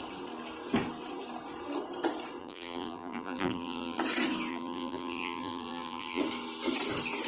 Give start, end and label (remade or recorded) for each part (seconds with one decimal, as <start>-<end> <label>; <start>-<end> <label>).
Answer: 0.0-2.4 recorded; 2.4-4.0 remade; 4.0-4.5 recorded; 4.5-6.2 remade; 6.2-7.3 recorded